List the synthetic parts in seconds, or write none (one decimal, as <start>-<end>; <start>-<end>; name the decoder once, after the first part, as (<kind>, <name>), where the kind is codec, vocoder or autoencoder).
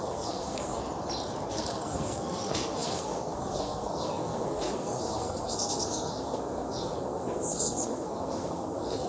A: 0.0-0.8 (codec, SNAC); 1.5-9.1